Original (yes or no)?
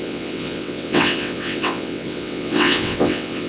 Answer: no